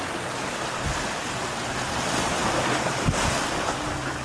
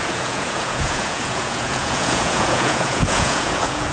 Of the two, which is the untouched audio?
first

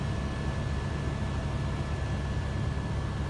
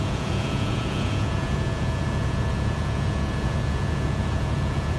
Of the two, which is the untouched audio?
first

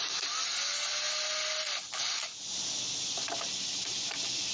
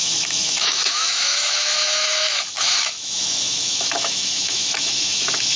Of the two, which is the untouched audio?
first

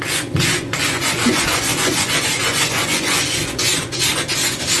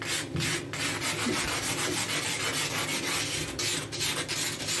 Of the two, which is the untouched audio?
second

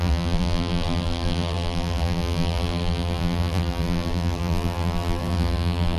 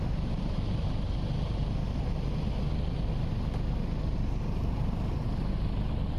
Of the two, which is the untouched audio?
second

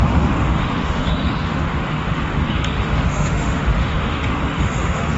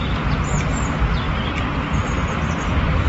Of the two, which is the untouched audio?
second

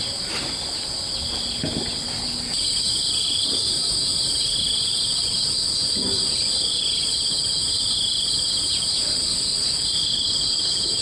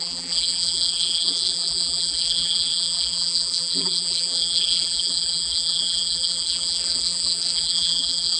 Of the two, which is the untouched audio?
first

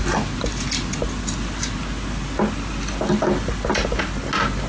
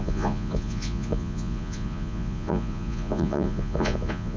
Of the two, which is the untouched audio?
first